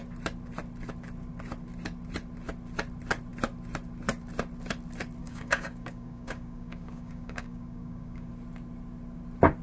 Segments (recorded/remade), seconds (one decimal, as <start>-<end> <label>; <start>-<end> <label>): 0.0-5.2 recorded; 5.2-8.3 remade; 8.3-9.6 recorded